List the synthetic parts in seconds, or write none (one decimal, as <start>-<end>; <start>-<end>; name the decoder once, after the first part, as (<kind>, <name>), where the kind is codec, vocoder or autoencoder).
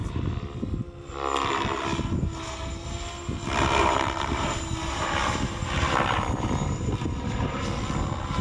3.8-7.6 (vocoder, BigVGAN v2)